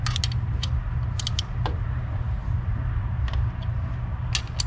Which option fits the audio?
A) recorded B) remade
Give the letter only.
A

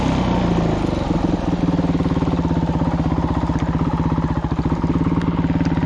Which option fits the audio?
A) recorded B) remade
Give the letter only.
A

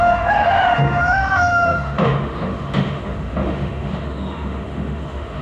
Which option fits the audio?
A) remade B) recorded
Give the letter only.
A